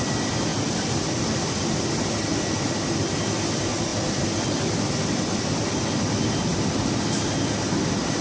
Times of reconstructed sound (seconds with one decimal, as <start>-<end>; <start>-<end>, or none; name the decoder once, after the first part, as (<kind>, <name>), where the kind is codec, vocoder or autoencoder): none